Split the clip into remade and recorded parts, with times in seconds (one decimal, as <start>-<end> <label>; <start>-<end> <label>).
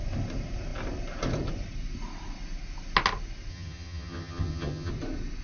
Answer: 0.0-3.5 recorded; 3.5-4.9 remade; 4.9-5.4 recorded